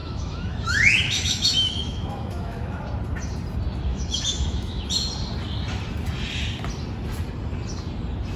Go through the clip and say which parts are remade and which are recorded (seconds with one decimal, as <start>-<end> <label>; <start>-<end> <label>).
0.0-2.8 remade; 2.8-3.9 recorded; 3.9-4.9 remade; 4.9-8.4 recorded